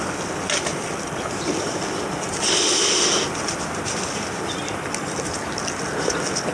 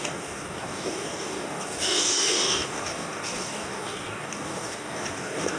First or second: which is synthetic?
second